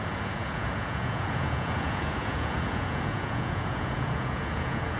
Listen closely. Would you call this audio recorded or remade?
remade